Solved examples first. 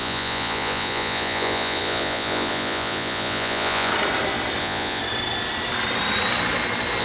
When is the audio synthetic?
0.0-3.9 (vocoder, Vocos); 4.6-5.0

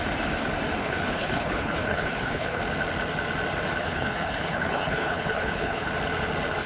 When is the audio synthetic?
0.8-2.6 (codec, HILCodec); 3.8-5.9

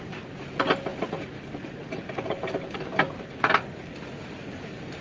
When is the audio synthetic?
none

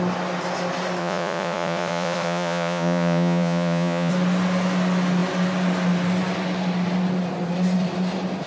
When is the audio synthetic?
1.0-4.1 (vocoder, Vocos)

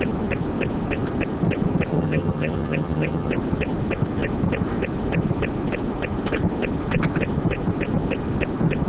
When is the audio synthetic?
1.9-3.3 (vocoder, HiFi-GAN)